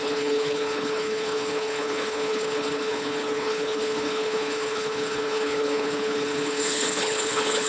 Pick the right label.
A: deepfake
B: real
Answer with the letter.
A